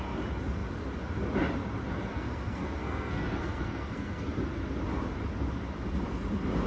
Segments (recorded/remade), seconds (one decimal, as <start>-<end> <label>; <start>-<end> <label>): 0.0-2.1 recorded; 2.1-4.3 remade; 4.3-6.7 recorded